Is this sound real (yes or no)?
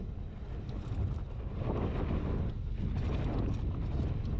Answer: yes